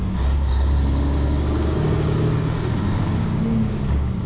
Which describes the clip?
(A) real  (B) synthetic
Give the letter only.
B